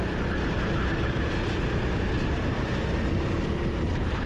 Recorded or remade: recorded